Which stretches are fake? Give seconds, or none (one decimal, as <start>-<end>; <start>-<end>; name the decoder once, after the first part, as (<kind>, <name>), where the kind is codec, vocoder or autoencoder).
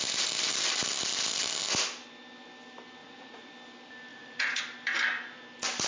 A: 3.0-3.5 (vocoder, Vocos); 4.1-4.6